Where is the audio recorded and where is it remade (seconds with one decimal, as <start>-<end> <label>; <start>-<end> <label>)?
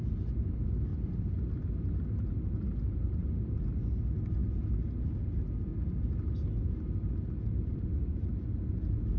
0.0-0.9 recorded; 0.9-1.5 remade; 1.5-9.2 recorded